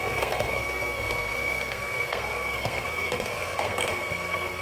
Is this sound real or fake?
fake